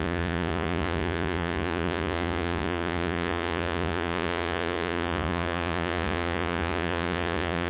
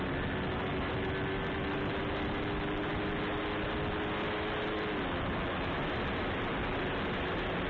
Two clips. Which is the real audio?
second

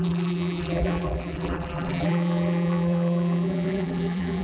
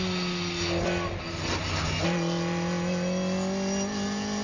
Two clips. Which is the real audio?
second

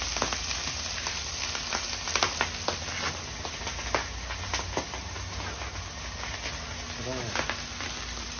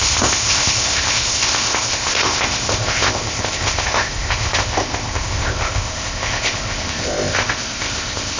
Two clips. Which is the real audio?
first